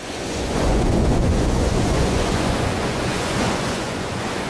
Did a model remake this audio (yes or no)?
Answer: yes